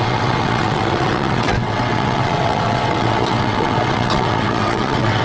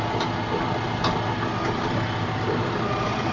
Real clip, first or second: second